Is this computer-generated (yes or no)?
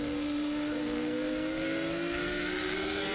yes